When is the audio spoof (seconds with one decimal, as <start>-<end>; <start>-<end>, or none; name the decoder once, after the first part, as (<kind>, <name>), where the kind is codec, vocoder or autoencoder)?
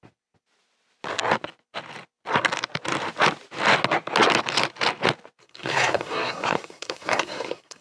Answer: 5.4-7.8 (codec, SNAC)